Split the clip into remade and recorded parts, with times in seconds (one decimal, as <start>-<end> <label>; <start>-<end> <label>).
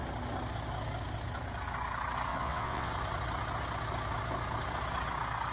0.0-2.3 recorded; 2.3-2.9 remade; 2.9-5.5 recorded